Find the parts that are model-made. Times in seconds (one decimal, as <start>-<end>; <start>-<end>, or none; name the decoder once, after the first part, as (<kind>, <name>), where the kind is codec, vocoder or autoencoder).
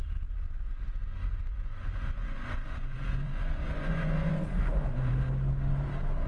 1.3-5.1 (vocoder, Vocos)